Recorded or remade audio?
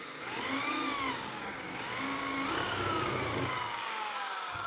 remade